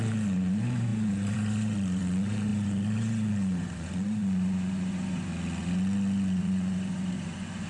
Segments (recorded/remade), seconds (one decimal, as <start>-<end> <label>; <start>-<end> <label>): 0.0-5.3 remade; 5.3-6.4 recorded; 6.4-7.7 remade